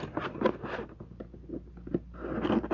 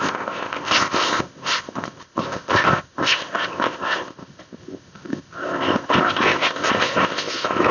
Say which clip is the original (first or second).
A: first